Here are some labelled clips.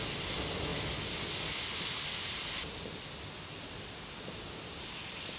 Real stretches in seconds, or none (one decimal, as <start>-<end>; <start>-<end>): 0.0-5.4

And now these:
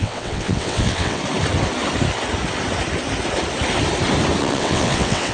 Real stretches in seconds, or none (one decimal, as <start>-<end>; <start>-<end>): 1.2-4.4

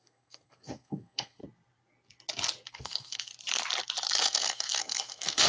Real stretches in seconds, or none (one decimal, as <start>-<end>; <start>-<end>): 1.4-2.7; 3.3-4.2

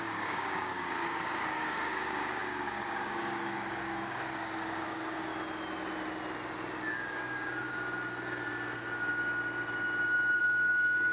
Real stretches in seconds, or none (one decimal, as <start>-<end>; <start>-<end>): 5.3-6.9; 7.7-10.4